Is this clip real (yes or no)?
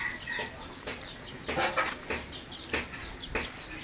yes